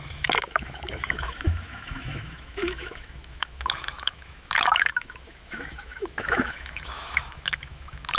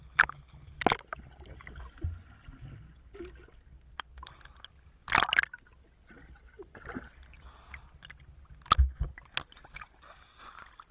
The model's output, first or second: first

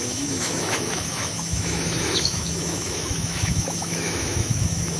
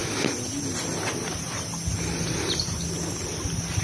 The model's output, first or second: first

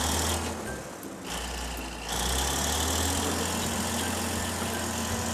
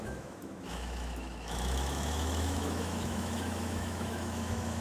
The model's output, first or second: second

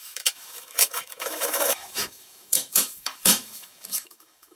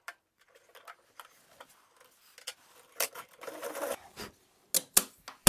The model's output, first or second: first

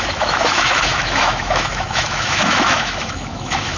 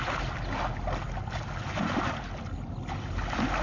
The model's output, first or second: first